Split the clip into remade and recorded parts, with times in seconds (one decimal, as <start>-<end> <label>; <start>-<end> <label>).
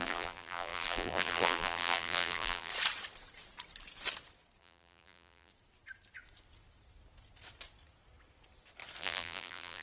0.0-2.7 remade; 2.7-4.6 recorded; 4.6-5.5 remade; 5.5-9.0 recorded; 9.0-9.8 remade